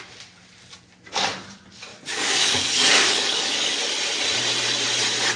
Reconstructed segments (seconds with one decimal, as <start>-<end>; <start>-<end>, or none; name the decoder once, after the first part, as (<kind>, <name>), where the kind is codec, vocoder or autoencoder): 1.9-3.8 (codec, DAC)